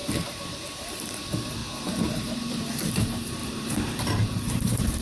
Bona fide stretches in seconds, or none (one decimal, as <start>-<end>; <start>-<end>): 1.6-2.2